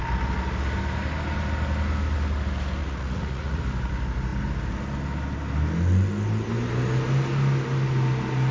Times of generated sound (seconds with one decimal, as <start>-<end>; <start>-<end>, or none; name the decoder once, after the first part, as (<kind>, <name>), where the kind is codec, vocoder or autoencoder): 2.8-3.6 (vocoder, Vocos)